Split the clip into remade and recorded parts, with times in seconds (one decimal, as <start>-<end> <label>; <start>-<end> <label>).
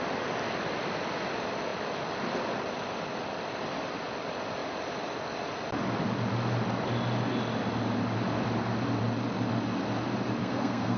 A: 0.0-10.4 recorded; 10.4-11.0 remade